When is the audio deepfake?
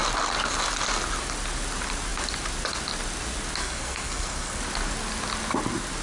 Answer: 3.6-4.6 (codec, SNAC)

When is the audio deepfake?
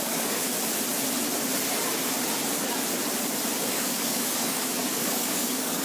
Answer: 0.0-0.5 (codec, DAC); 3.7-5.8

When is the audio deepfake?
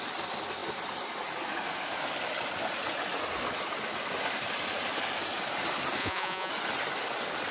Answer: 6.0-6.5 (vocoder, Vocos)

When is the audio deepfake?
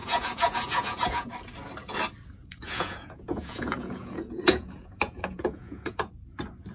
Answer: 0.0-1.3 (vocoder, Vocos); 2.4-6.1